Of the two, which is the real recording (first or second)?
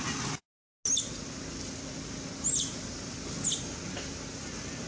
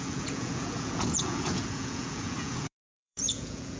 first